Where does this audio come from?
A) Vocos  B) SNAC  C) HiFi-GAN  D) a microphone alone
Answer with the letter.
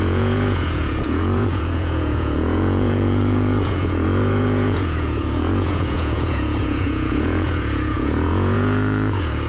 A